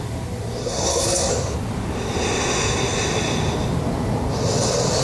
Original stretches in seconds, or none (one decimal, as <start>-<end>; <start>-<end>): 0.0-0.6; 1.3-5.0